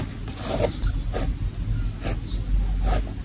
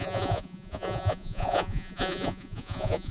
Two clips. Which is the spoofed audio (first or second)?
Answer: second